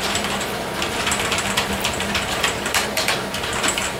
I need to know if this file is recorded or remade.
remade